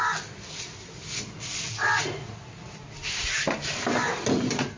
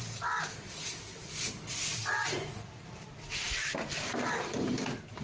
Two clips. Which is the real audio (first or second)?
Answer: first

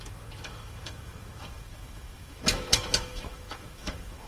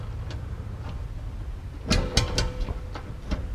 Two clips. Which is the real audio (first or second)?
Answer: second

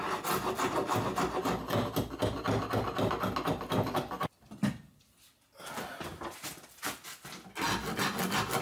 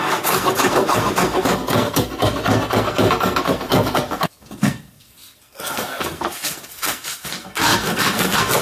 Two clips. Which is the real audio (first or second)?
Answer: first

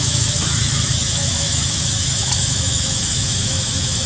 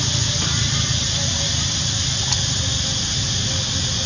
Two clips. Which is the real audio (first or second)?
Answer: second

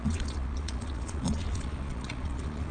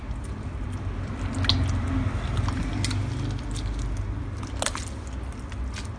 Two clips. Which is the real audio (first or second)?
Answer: second